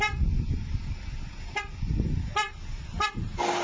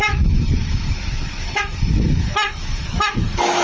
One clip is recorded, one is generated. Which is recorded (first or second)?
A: first